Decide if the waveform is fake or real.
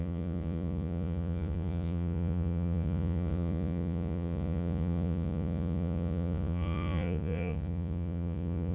fake